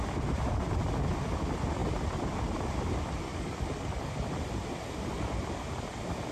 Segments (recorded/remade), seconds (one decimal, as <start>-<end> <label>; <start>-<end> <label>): 0.0-3.3 recorded; 3.3-4.1 remade; 4.1-6.3 recorded